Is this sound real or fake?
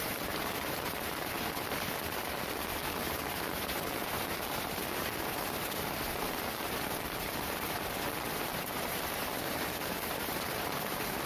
fake